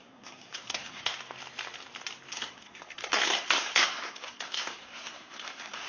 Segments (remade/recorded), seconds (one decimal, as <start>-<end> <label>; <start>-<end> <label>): 0.0-1.1 remade; 1.1-2.3 recorded; 2.3-5.9 remade